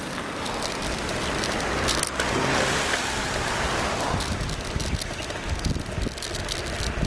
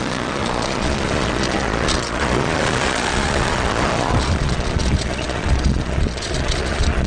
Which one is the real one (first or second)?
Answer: first